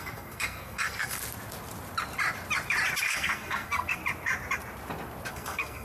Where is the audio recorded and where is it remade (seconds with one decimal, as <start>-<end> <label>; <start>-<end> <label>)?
0.0-1.2 remade; 1.2-3.0 recorded; 3.0-4.0 remade; 4.0-5.3 recorded; 5.3-5.8 remade